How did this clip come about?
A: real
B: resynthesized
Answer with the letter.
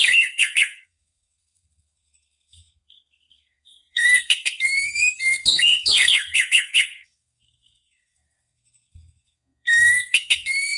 B